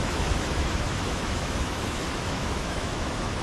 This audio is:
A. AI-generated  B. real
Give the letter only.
A